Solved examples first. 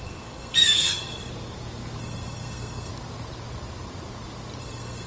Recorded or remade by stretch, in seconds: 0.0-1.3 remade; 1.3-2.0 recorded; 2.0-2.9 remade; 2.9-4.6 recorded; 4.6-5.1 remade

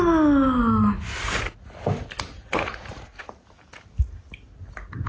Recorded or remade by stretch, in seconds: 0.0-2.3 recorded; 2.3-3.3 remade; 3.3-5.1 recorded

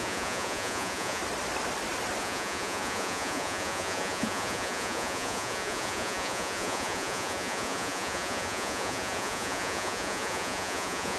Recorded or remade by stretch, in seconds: 0.0-1.2 remade; 1.2-2.2 recorded; 2.2-11.2 remade

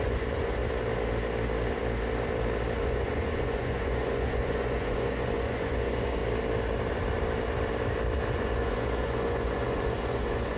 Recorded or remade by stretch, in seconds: 0.0-0.6 remade; 0.6-2.8 recorded; 2.8-6.2 remade; 6.2-8.3 recorded; 8.3-10.6 remade

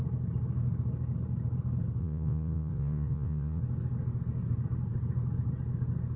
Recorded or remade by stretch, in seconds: 0.0-2.0 recorded; 2.0-3.6 remade; 3.6-6.2 recorded

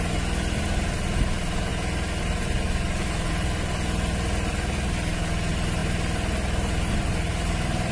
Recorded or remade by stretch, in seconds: 0.0-7.9 recorded

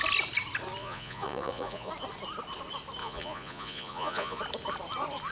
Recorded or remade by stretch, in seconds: 0.0-0.8 recorded; 0.8-1.9 remade; 1.9-3.0 recorded; 3.0-4.4 remade; 4.4-5.3 recorded